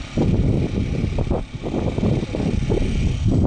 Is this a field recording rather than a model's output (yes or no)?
yes